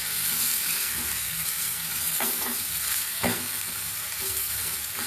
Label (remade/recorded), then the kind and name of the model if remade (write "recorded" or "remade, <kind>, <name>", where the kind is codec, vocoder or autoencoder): remade, codec, SNAC